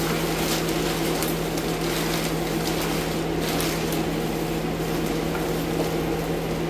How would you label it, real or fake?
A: real